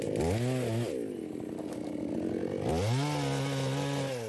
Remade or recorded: recorded